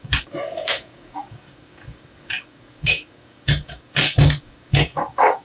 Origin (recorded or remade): remade